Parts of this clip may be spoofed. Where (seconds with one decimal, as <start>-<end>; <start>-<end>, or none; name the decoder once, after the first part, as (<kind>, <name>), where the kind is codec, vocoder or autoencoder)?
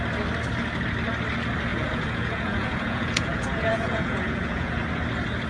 1.7-4.7 (vocoder, Vocos)